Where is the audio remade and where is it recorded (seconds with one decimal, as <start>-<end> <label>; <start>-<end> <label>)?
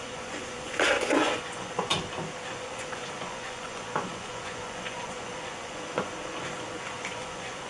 0.0-1.9 remade; 1.9-2.5 recorded; 2.5-7.7 remade